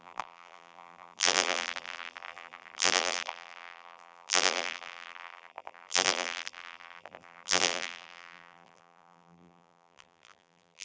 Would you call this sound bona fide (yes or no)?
no